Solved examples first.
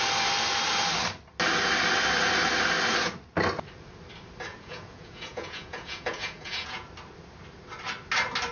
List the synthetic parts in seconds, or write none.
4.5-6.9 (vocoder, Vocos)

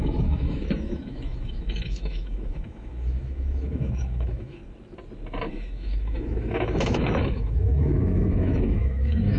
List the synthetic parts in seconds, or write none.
0.0-4.6 (autoencoder, DAC-VAE); 5.5-9.4

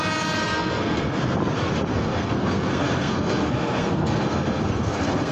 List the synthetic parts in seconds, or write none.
0.4-1.2 (codec, SNAC); 1.9-5.3

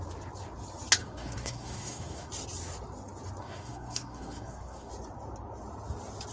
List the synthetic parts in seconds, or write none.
1.0-2.3 (codec, SNAC); 3.4-4.9

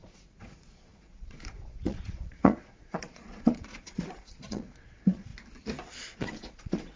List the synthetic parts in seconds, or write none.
0.0-5.3 (vocoder, Vocos); 5.9-7.0